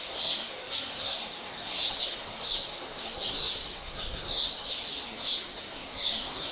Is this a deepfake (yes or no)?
yes